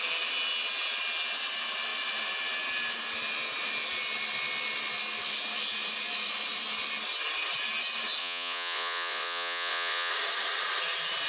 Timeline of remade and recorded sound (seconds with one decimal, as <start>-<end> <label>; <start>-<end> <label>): 0.0-8.2 recorded; 8.2-10.1 remade; 10.1-11.3 recorded

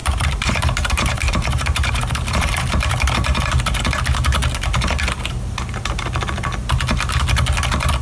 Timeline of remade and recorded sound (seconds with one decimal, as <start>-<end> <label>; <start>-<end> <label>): 0.0-2.9 remade; 2.9-8.0 recorded

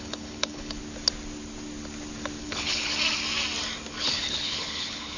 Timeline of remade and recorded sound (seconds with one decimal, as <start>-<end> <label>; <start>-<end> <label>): 0.0-0.8 remade; 0.8-2.4 recorded; 2.4-2.9 remade; 2.9-4.0 recorded; 4.0-5.2 remade

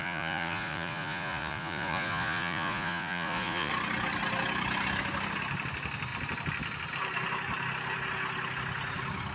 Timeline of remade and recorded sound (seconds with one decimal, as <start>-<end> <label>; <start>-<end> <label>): 0.0-3.7 remade; 3.7-9.3 recorded

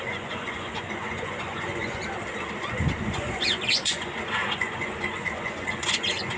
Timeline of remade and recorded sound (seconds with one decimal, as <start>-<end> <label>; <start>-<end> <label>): 0.0-2.0 remade; 2.0-2.6 recorded; 2.6-6.4 remade

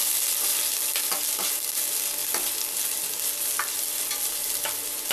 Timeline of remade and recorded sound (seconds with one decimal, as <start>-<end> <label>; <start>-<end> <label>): 0.0-5.1 recorded

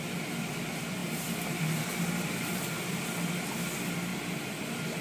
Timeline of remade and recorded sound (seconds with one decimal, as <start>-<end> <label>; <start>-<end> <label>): 0.0-5.0 recorded

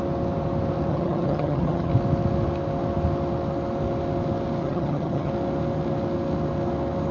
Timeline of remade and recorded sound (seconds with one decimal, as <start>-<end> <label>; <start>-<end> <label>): 0.0-0.9 recorded; 0.9-1.9 remade; 1.9-4.6 recorded; 4.6-5.3 remade; 5.3-7.1 recorded